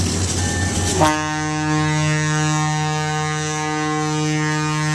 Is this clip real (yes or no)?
yes